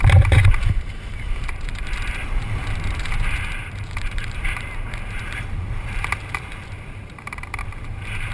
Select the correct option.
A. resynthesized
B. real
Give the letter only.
A